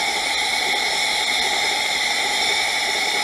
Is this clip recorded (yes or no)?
yes